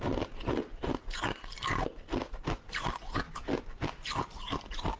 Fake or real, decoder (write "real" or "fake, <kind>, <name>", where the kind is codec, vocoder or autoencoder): real